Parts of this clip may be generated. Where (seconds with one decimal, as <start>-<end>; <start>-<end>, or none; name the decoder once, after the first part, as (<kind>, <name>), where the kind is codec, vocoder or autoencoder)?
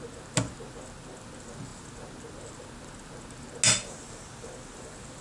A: none